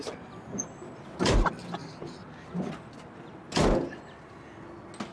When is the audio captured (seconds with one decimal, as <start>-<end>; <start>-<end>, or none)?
0.0-5.1